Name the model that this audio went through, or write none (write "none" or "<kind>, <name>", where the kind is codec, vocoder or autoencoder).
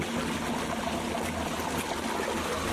none